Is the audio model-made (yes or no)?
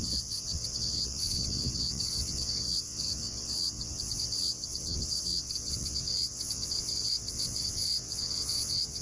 yes